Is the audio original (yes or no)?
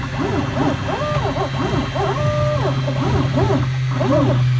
yes